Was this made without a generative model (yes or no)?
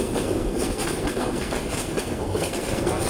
no